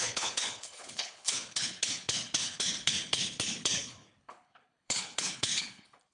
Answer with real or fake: fake